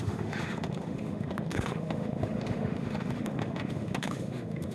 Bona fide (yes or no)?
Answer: no